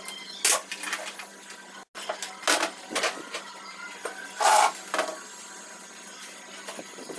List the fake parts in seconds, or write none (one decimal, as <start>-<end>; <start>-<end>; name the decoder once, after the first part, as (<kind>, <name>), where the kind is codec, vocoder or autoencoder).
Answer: none